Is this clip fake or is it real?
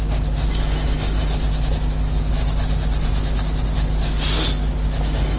real